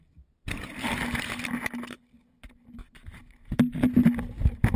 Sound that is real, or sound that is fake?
real